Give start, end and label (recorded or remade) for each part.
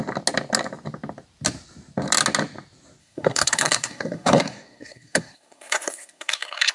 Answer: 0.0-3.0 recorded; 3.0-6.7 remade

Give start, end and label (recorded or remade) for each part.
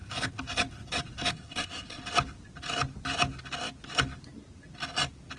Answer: 0.0-1.3 recorded; 1.3-2.0 remade; 2.0-5.4 recorded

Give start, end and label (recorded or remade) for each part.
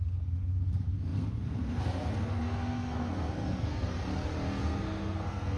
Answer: 0.0-3.9 remade; 3.9-4.6 recorded; 4.6-5.6 remade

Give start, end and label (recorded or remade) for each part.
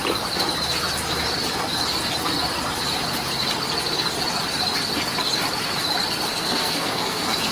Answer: 0.0-6.3 recorded; 6.3-7.5 remade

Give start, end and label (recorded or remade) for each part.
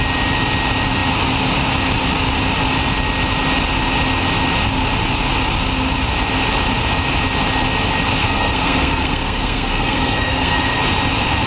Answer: 0.0-8.2 recorded; 8.2-10.8 remade; 10.8-11.5 recorded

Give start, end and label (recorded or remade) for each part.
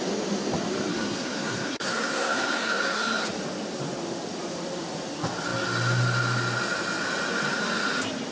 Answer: 0.0-0.9 recorded; 0.9-3.3 remade; 3.3-8.3 recorded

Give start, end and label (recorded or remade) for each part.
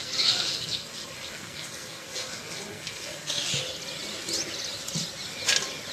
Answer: 0.0-3.5 remade; 3.5-5.9 recorded